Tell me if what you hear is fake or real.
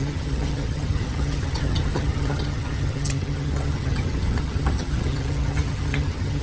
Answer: fake